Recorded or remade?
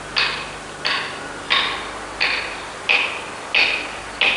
recorded